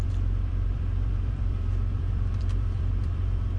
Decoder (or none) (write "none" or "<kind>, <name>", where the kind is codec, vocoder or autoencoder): vocoder, BigVGAN v2